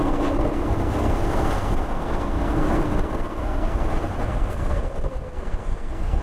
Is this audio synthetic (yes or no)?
yes